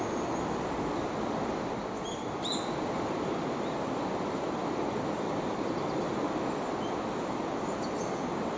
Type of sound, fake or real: real